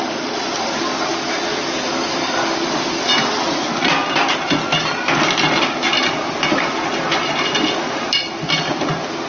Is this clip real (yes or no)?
yes